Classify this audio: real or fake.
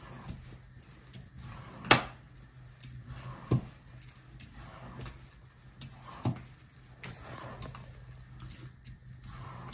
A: real